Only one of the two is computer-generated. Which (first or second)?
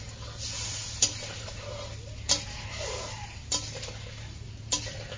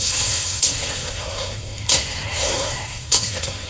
second